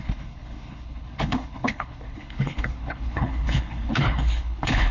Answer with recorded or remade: remade